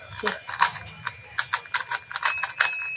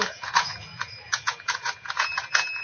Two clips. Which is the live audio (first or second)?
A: first